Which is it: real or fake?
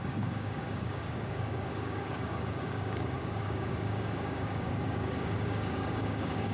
fake